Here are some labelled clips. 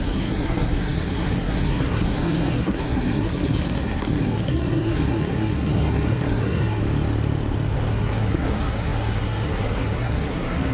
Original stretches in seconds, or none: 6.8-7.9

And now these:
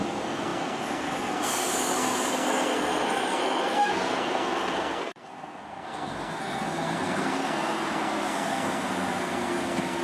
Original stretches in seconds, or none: none

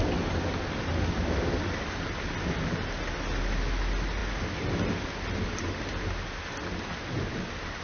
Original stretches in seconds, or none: 0.0-7.8

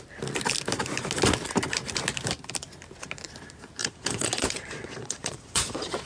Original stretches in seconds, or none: 0.0-3.8